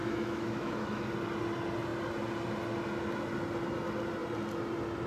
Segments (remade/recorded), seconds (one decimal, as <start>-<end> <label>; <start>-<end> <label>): 0.0-1.1 remade; 1.1-5.1 recorded